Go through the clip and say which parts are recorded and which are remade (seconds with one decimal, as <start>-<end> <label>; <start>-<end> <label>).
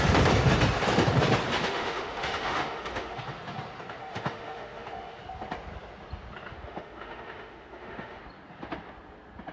0.0-1.6 recorded; 1.6-3.2 remade; 3.2-4.0 recorded; 4.0-5.2 remade; 5.2-6.5 recorded; 6.5-8.2 remade; 8.2-9.5 recorded